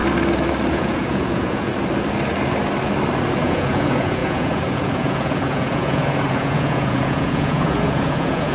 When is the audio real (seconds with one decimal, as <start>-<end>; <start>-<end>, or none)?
0.0-0.7; 1.7-3.4